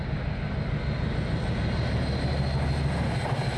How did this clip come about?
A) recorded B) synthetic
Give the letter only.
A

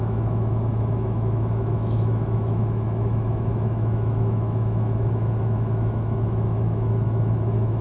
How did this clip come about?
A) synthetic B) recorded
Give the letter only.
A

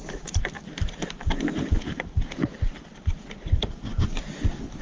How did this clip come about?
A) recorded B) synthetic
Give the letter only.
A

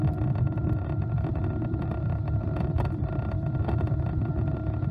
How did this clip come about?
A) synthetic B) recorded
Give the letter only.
A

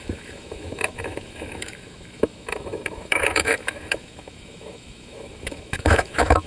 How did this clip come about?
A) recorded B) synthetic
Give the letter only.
B